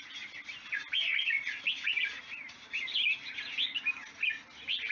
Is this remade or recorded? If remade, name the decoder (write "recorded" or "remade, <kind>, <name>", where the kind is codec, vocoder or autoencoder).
recorded